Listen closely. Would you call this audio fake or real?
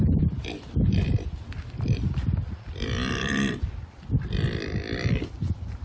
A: fake